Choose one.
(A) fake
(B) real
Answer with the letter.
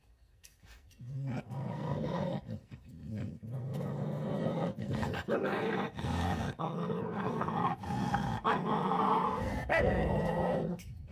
A